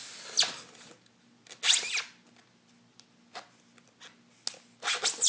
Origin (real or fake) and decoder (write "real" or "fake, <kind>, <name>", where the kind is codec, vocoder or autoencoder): real